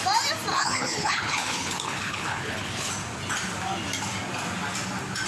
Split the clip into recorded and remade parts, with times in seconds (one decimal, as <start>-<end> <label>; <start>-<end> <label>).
0.0-0.5 recorded; 0.5-2.9 remade; 2.9-5.3 recorded